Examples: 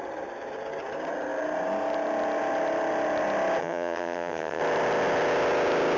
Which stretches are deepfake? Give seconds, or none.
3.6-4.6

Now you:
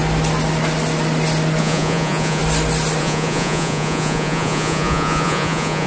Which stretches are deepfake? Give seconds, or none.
1.6-2.4; 3.0-5.9

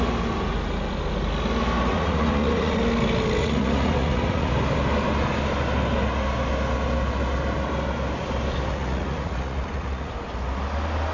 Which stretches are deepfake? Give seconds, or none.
1.9-2.8; 3.4-4.5; 8.7-10.1